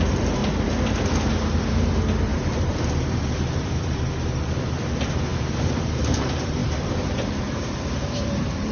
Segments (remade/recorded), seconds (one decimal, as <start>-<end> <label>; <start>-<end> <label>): 0.0-0.4 remade; 0.4-1.3 recorded; 1.3-8.7 remade